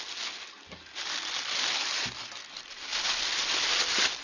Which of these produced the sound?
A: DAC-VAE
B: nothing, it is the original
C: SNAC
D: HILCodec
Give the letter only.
B